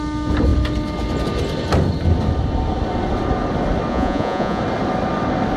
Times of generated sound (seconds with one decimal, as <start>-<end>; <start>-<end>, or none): 3.9-4.6